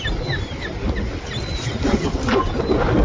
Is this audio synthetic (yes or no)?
yes